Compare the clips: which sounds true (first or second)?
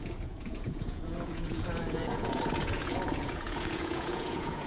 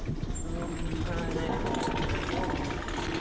second